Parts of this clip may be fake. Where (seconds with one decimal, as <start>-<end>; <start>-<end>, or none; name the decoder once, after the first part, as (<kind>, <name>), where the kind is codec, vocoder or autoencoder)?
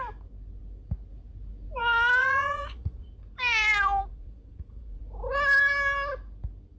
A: 2.2-3.1 (vocoder, Vocos); 4.1-5.0